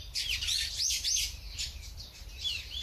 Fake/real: fake